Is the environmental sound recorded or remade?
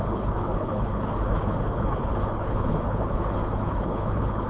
remade